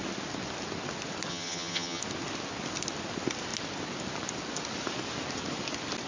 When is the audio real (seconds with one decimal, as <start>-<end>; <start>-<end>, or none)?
0.0-1.3; 2.0-6.1